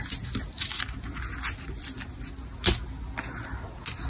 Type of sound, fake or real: real